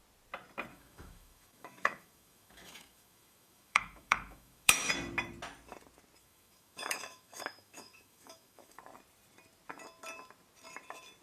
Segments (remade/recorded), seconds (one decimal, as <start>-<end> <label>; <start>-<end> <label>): 0.0-0.7 recorded; 0.7-4.9 remade; 4.9-6.2 recorded; 6.2-8.8 remade; 8.8-11.2 recorded